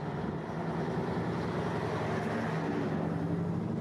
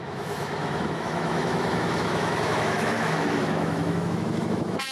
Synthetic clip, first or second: second